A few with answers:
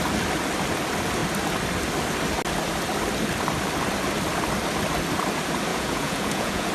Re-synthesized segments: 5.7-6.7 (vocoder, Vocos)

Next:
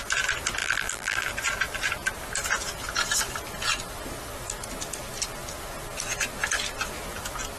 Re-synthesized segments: 0.6-1.3 (vocoder, BigVGAN v2)

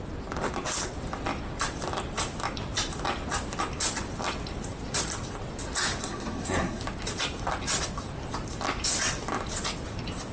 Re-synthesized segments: 6.0-6.8 (codec, SNAC)

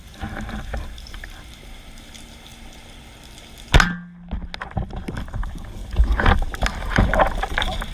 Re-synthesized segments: 0.0-2.5 (vocoder, BigVGAN v2); 5.3-5.8; 6.7-7.9